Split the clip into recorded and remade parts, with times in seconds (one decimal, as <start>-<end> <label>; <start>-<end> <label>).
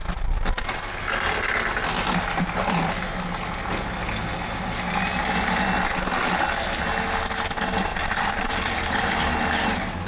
0.0-7.9 recorded; 7.9-9.3 remade; 9.3-10.1 recorded